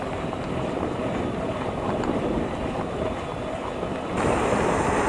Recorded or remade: remade